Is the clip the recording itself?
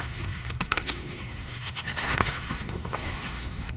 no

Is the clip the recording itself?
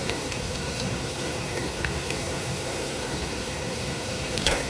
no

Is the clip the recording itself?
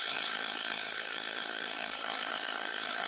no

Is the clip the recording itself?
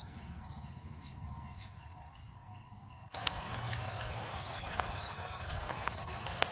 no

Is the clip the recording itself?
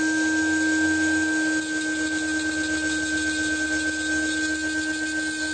yes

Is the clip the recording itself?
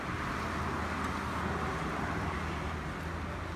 yes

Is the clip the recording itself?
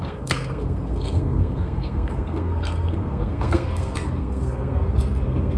no